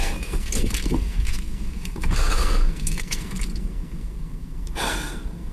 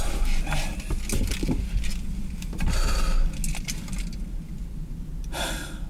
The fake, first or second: first